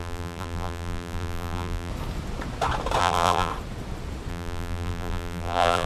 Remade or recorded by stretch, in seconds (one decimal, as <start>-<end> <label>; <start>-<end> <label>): 0.0-1.9 remade; 1.9-3.0 recorded; 3.0-3.5 remade; 3.5-4.3 recorded; 4.3-5.9 remade